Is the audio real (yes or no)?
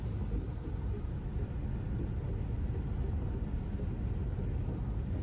yes